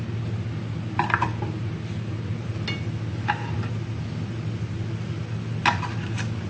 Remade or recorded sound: recorded